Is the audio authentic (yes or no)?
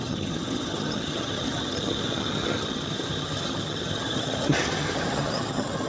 no